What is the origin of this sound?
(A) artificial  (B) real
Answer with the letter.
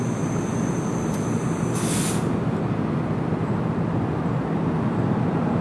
B